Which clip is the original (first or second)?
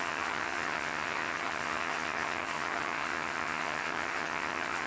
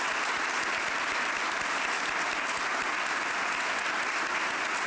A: second